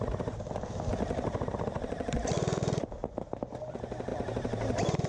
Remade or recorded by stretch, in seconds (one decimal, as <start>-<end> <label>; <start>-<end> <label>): 0.0-4.1 recorded; 4.1-5.1 remade